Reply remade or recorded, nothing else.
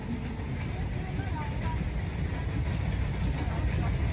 recorded